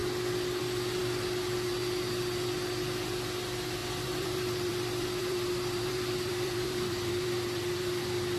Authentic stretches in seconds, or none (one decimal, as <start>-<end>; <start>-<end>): 0.0-3.8; 8.0-8.4